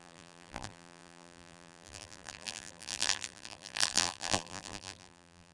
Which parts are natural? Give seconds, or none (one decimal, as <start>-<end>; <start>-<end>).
none